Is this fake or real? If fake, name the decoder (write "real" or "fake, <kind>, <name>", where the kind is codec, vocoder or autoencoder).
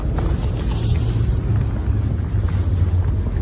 real